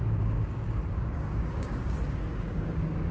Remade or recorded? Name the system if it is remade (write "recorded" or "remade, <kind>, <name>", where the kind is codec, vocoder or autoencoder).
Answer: remade, codec, DAC